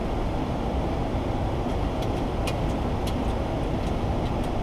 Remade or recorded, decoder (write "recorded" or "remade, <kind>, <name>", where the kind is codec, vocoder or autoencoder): recorded